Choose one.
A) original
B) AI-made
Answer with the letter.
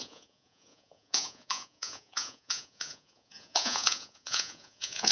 B